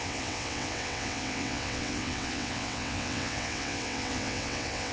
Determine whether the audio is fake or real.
fake